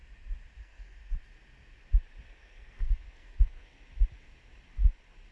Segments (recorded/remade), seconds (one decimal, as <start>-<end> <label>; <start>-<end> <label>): 0.0-0.6 recorded; 0.6-1.0 remade; 1.0-2.2 recorded; 2.2-3.7 remade; 3.7-5.3 recorded